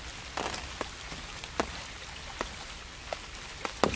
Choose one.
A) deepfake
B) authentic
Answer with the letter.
B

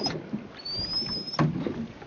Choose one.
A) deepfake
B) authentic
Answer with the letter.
B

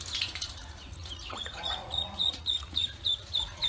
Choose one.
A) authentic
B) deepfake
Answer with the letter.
B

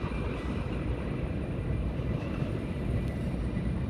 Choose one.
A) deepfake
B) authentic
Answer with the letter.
B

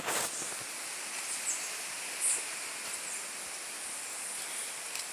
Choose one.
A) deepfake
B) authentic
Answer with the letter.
B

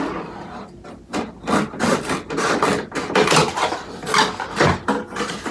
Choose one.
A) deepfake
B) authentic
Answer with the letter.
B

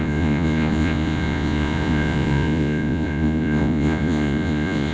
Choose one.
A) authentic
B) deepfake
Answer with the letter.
B